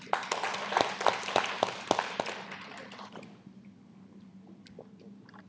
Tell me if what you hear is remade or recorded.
recorded